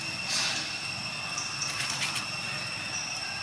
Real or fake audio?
real